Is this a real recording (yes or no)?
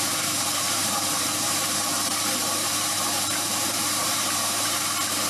no